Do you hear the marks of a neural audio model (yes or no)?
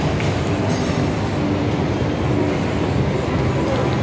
no